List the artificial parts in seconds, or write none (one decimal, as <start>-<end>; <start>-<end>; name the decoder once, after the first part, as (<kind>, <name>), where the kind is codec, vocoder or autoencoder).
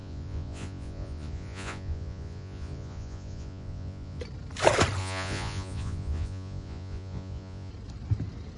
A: 0.0-4.2 (vocoder, Vocos); 5.0-7.7